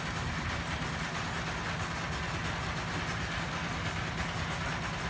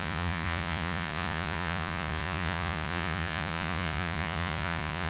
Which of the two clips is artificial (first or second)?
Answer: second